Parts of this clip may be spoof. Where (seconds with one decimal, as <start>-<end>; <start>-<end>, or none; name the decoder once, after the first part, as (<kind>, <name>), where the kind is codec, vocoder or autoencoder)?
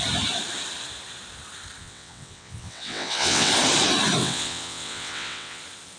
1.8-3.5 (vocoder, WaveNeXt); 4.2-5.6